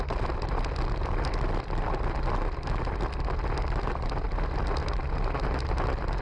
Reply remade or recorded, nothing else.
recorded